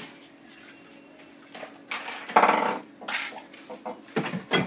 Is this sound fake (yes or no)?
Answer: no